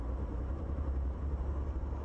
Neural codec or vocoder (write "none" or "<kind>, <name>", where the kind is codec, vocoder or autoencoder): vocoder, BigVGAN v2